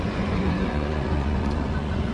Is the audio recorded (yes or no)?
no